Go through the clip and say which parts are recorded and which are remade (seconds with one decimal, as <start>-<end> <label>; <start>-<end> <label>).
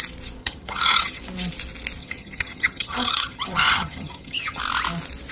0.0-0.4 recorded; 0.4-1.2 remade; 1.2-2.0 recorded; 2.0-4.6 remade; 4.6-5.3 recorded